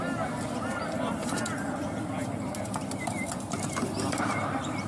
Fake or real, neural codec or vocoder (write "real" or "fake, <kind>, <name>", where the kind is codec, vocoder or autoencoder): fake, vocoder, BigVGAN v2